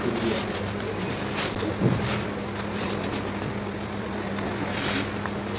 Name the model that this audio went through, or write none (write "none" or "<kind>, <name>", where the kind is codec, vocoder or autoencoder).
none